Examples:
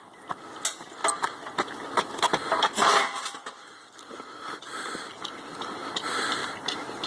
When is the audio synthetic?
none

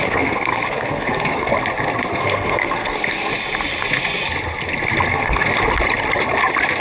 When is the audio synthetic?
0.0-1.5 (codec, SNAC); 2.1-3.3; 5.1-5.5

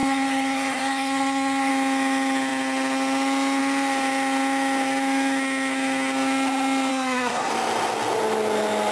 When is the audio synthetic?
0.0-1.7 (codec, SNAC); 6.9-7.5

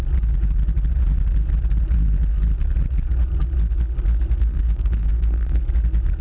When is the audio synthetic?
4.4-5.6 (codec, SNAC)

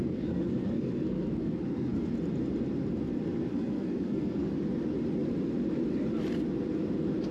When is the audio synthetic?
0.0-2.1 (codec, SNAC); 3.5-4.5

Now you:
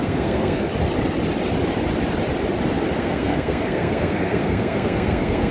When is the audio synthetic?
0.0-0.7 (codec, SNAC); 3.0-5.5

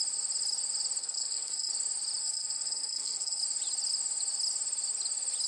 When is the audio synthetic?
1.0-1.7 (codec, SNAC); 2.2-3.4

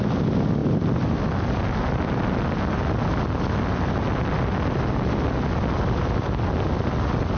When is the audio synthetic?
none